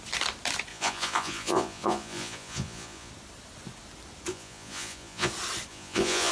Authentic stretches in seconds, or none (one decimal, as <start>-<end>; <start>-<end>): 0.0-0.7; 3.1-4.3; 5.3-5.7